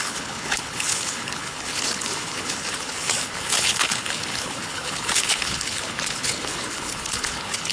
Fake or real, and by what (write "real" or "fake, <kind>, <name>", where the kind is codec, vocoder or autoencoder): fake, codec, HILCodec